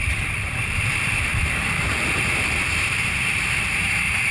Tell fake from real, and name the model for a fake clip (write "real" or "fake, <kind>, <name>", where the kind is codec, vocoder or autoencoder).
fake, vocoder, BigVGAN v2